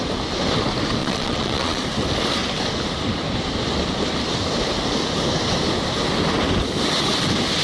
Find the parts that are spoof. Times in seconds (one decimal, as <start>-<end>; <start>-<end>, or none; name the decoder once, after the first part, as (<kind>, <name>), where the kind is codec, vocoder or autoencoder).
1.0-1.8 (vocoder, Vocos)